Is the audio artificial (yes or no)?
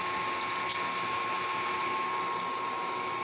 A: no